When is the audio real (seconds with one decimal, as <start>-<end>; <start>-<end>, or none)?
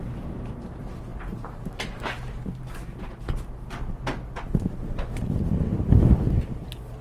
0.0-7.0